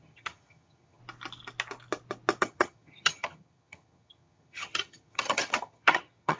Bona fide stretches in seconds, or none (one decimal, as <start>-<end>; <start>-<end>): 1.0-2.4